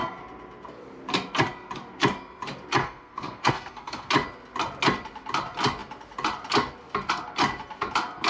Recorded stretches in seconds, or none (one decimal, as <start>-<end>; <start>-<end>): 0.0-2.8; 4.1-8.3